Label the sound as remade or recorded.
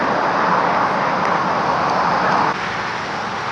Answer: recorded